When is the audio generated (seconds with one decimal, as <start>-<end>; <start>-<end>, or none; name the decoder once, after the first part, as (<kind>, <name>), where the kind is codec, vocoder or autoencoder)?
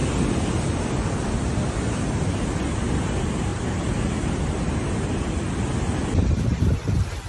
3.5-5.2 (vocoder, BigVGAN v2)